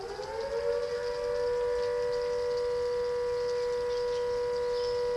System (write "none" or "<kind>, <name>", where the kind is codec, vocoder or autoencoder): none